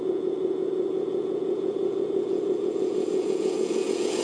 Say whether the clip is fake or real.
fake